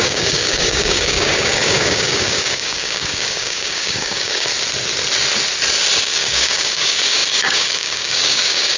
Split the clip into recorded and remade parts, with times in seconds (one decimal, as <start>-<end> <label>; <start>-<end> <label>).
0.0-4.5 remade; 4.5-6.0 recorded; 6.0-8.8 remade